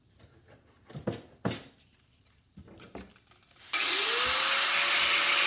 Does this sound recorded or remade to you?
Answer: recorded